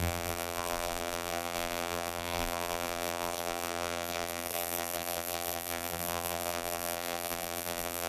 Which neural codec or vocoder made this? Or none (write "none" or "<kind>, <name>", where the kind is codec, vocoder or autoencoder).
vocoder, BigVGAN v2